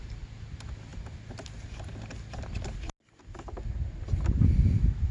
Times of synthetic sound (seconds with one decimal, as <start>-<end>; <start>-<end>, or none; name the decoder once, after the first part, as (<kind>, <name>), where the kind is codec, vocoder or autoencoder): none